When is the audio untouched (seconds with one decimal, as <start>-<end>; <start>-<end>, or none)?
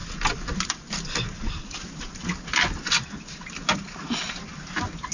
0.0-5.1